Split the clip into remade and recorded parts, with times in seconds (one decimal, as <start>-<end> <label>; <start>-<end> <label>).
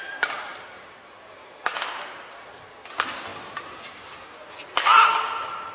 0.0-5.7 recorded